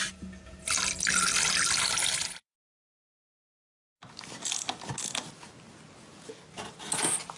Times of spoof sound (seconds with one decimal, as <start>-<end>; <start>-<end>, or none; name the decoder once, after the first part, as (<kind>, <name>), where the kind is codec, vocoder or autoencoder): none